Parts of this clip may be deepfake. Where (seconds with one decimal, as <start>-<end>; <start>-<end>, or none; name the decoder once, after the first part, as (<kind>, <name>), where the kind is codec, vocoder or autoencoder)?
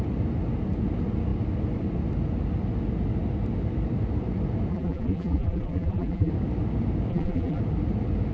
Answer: 4.7-6.3 (vocoder, BigVGAN v2); 7.1-7.6